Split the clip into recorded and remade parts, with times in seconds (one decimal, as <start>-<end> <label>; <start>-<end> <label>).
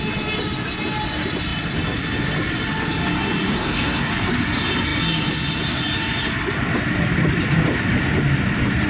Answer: 0.0-3.5 recorded; 3.5-4.1 remade; 4.1-8.9 recorded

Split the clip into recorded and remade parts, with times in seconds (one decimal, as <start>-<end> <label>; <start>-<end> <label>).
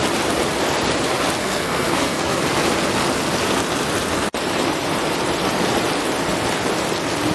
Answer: 0.0-1.4 recorded; 1.4-2.4 remade; 2.4-7.3 recorded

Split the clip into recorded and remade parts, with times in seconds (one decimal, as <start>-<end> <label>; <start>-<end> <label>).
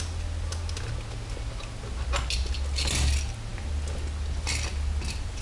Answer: 0.0-5.4 recorded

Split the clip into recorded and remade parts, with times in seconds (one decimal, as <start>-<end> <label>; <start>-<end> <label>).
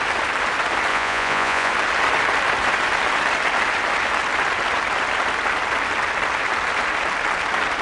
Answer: 0.0-0.9 recorded; 0.9-1.7 remade; 1.7-7.8 recorded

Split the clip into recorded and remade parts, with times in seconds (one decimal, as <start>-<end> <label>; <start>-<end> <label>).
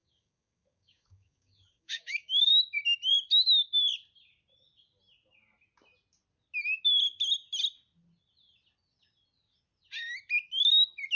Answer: 0.0-2.5 remade; 2.5-11.2 recorded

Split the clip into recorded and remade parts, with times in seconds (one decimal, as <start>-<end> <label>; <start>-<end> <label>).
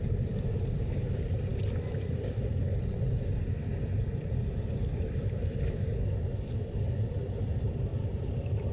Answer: 0.0-8.7 recorded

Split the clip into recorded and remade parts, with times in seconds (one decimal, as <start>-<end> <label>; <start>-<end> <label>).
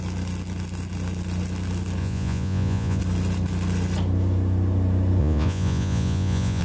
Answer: 0.0-2.0 recorded; 2.0-3.0 remade; 3.0-5.2 recorded; 5.2-6.6 remade